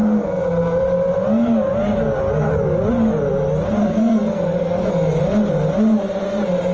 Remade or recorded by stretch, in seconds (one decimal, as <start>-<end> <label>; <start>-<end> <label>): 0.0-3.8 recorded; 3.8-4.9 remade; 4.9-6.7 recorded